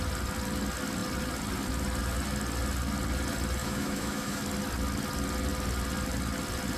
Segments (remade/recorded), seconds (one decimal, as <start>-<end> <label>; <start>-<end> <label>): 0.0-3.6 recorded; 3.6-4.4 remade; 4.4-6.8 recorded